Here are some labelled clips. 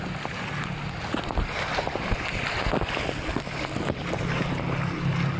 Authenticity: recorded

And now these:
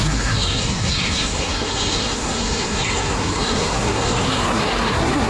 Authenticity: remade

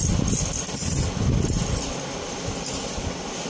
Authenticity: recorded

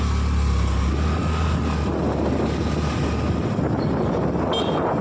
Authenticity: recorded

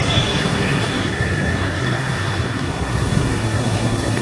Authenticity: remade